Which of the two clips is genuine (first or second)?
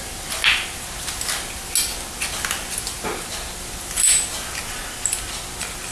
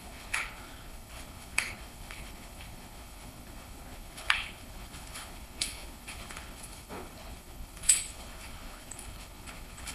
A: first